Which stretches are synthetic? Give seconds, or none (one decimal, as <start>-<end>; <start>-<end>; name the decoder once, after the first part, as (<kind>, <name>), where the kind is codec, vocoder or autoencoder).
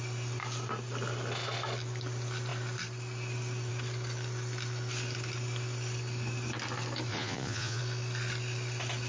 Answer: 7.1-7.8 (vocoder, Vocos)